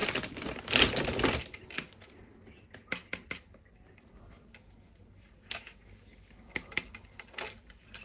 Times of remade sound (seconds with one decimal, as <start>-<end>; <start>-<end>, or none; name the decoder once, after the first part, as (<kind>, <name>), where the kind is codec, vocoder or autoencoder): none